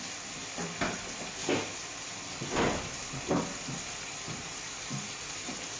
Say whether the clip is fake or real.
real